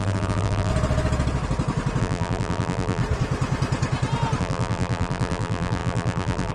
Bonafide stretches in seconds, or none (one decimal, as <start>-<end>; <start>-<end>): 0.7-2.0; 3.0-4.4